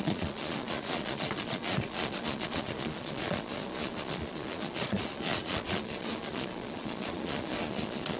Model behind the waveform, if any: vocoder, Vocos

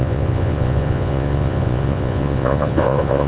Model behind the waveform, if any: vocoder, Vocos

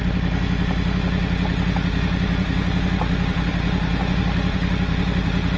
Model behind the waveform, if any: none